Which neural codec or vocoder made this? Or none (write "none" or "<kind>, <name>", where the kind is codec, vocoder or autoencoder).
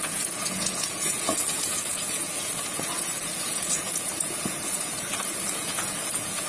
vocoder, Vocos